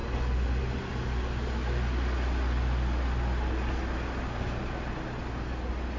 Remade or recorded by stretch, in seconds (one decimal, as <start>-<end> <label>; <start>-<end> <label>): 0.0-6.0 recorded